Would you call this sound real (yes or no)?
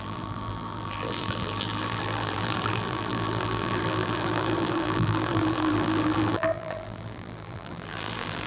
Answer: no